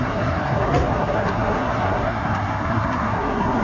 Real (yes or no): no